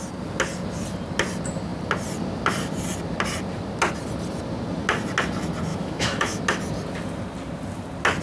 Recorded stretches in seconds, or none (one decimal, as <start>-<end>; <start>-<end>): 0.0-5.7; 6.4-8.2